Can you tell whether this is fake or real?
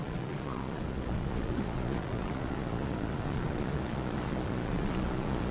fake